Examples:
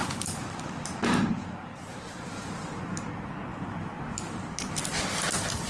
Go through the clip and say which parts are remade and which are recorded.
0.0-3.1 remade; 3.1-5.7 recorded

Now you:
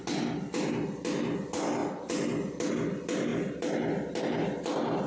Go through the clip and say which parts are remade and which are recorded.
0.0-5.1 recorded

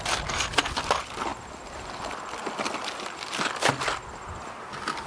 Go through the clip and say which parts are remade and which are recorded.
0.0-5.1 recorded

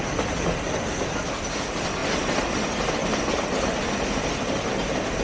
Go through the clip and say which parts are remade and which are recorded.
0.0-5.2 recorded

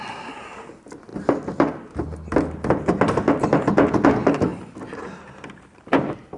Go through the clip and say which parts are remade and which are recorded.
0.0-6.4 recorded